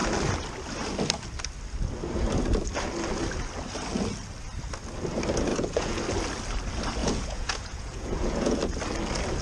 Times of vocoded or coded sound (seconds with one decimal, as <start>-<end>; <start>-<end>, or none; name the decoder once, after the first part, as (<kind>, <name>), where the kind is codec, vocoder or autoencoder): 5.5-6.0 (vocoder, Vocos); 7.0-8.6